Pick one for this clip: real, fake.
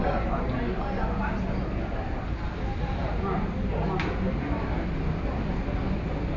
real